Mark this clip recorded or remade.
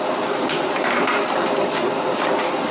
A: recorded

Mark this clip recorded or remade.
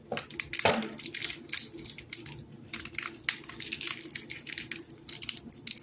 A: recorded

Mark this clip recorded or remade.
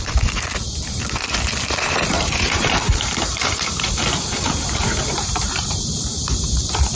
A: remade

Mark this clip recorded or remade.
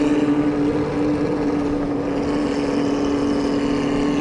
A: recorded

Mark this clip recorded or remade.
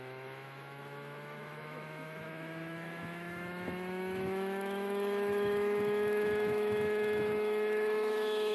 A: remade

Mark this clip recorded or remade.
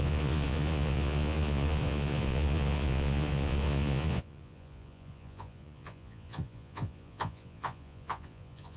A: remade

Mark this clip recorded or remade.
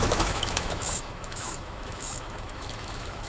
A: remade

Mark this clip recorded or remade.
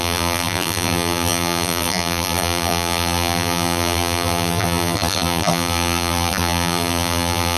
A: remade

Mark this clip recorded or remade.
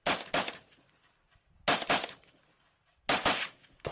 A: recorded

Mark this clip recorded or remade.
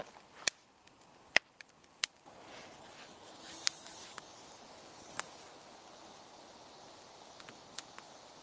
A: recorded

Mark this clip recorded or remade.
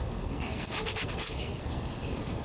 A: remade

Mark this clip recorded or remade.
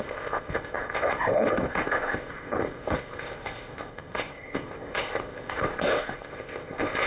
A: remade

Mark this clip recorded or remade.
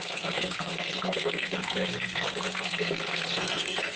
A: remade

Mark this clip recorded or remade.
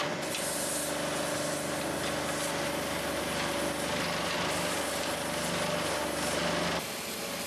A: recorded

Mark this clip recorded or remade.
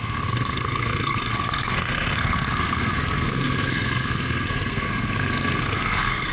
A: remade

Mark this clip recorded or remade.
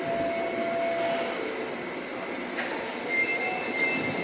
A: recorded